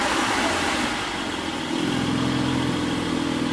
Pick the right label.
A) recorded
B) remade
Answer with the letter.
A